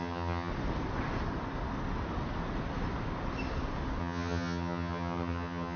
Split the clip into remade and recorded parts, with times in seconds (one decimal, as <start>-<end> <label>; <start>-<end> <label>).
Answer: 0.0-0.5 remade; 0.5-4.0 recorded; 4.0-5.8 remade